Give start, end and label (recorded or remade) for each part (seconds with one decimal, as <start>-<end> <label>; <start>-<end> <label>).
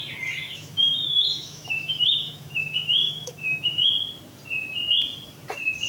0.0-0.4 recorded; 0.4-3.9 remade; 3.9-5.9 recorded